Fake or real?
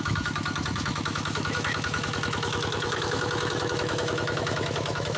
fake